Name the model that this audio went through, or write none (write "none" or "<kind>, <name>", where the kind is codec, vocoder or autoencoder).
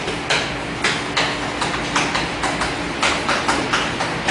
none